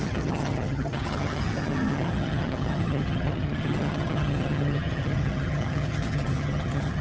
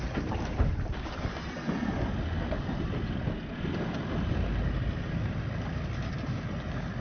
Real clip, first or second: second